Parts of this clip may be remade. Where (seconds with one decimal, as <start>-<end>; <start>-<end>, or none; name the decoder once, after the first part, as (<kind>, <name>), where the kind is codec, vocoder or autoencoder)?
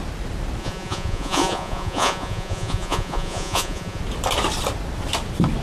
0.6-4.0 (vocoder, Vocos)